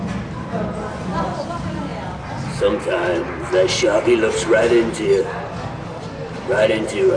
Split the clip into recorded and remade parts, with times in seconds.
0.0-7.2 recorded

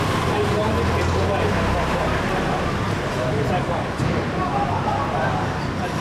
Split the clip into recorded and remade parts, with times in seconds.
0.0-6.0 recorded

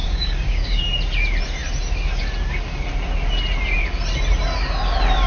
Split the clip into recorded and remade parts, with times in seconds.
0.0-0.8 remade; 0.8-5.3 recorded